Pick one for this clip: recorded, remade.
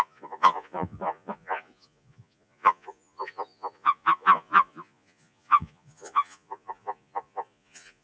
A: remade